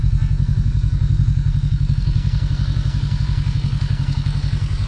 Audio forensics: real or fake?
fake